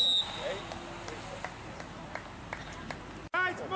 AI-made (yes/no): no